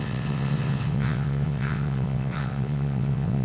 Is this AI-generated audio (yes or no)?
yes